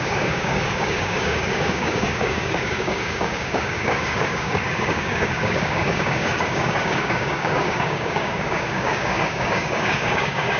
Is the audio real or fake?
fake